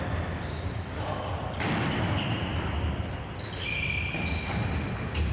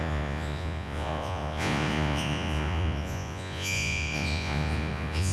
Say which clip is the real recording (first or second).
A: first